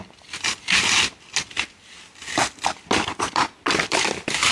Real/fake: real